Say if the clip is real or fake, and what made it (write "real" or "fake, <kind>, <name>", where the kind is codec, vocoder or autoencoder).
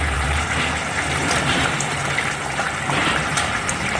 fake, vocoder, BigVGAN v2